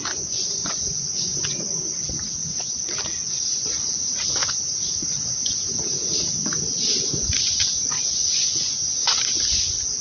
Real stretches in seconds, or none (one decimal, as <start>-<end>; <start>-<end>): 1.8-2.4; 2.9-4.4; 6.1-7.2; 9.2-10.0